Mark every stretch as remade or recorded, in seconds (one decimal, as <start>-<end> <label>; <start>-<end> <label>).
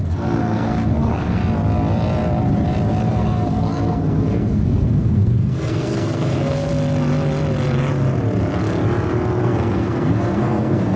0.0-1.4 remade; 1.4-3.0 recorded; 3.0-6.7 remade; 6.7-9.4 recorded; 9.4-11.0 remade